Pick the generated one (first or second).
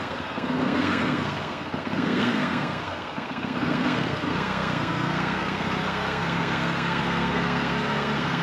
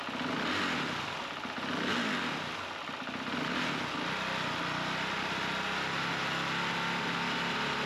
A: first